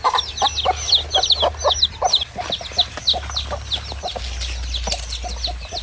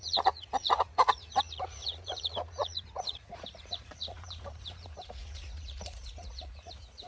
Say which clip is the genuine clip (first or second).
first